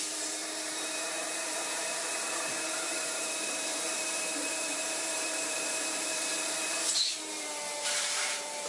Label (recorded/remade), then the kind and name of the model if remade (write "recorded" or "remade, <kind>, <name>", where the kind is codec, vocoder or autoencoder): remade, vocoder, BigVGAN v2